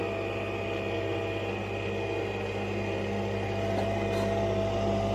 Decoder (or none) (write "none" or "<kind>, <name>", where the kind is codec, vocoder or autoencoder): none